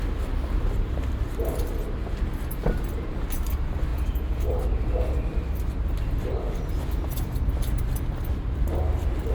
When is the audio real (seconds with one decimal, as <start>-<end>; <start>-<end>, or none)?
0.0-3.9; 4.6-9.3

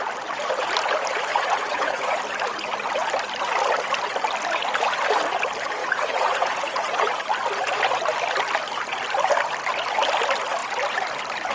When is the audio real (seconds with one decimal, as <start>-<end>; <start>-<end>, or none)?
0.0-1.3; 2.2-5.8; 7.2-11.5

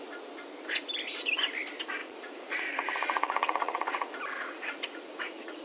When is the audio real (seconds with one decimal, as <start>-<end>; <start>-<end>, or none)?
0.0-2.0

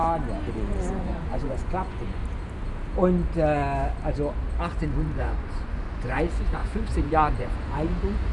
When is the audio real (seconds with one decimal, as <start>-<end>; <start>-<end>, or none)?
0.0-0.5; 2.2-4.8

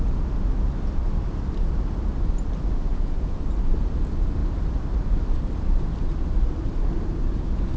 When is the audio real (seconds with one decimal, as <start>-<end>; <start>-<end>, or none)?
0.0-2.9; 3.4-7.8